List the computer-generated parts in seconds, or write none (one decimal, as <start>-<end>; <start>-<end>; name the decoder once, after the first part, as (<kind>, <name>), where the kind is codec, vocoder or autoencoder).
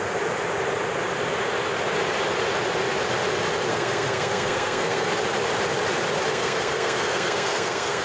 3.7-5.1 (codec, SNAC); 6.3-8.0